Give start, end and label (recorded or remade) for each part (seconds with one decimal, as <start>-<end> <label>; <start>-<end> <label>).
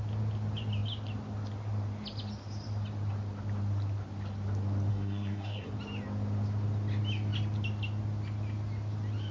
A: 0.0-4.9 recorded; 4.9-5.7 remade; 5.7-9.3 recorded